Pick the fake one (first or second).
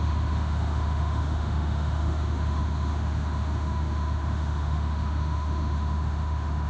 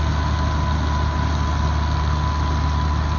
first